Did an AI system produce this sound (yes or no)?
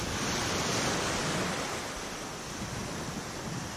no